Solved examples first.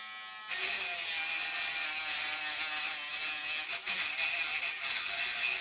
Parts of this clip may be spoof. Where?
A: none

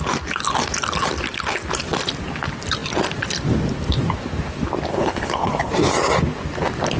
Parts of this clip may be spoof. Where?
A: 4.9-5.7 (codec, HILCodec)

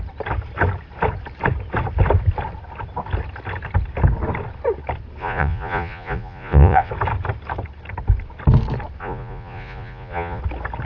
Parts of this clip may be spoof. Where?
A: 5.2-6.9 (vocoder, Vocos); 9.0-10.4

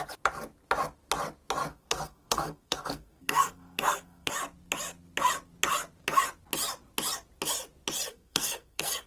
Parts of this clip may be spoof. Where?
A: 1.7-4.3 (codec, SNAC); 8.1-9.1

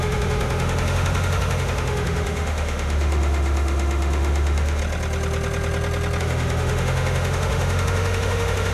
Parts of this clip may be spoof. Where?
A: 0.0-4.8 (autoencoder, DAC-VAE); 6.2-8.7

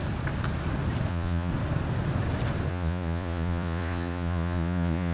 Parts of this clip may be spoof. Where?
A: 1.1-1.5 (vocoder, Vocos); 2.7-5.1

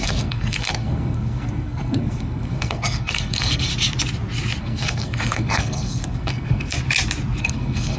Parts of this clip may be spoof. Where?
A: 0.0-3.7 (codec, SNAC); 4.6-6.7; 7.4-8.0